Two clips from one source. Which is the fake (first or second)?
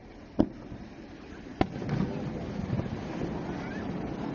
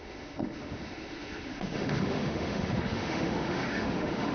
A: second